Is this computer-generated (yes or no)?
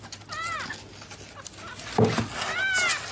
no